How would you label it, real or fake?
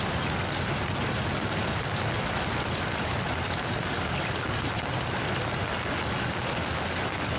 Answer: real